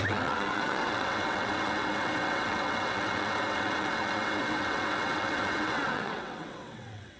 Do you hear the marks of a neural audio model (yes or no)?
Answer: yes